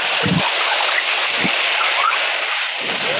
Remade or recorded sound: recorded